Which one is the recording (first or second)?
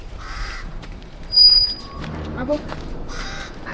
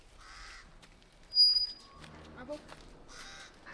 second